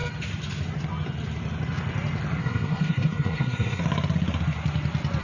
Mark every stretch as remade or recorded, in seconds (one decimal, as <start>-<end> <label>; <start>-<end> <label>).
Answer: 0.0-2.4 recorded; 2.4-3.8 remade; 3.8-5.2 recorded